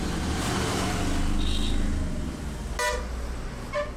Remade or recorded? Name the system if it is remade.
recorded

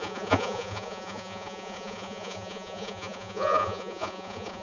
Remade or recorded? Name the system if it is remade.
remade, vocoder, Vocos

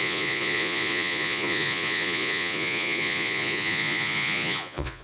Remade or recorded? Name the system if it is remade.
remade, vocoder, Vocos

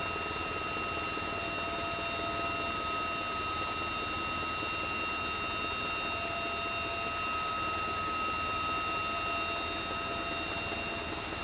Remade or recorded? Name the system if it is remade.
recorded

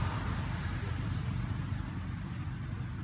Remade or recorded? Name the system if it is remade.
recorded